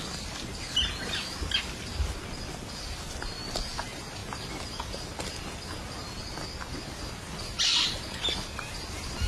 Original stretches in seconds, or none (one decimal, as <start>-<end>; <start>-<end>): 0.0-9.3